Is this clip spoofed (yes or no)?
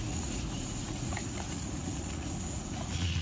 yes